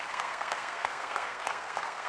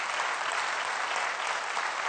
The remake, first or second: first